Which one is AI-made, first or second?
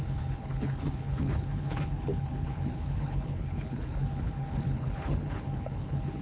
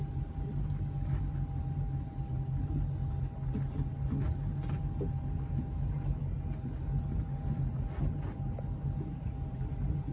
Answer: first